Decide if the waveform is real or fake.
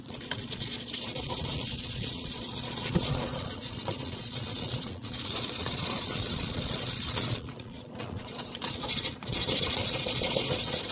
fake